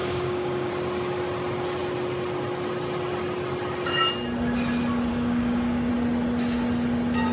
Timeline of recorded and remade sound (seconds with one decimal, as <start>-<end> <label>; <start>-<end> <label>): 0.0-0.7 remade; 0.7-5.1 recorded; 5.1-5.9 remade; 5.9-7.3 recorded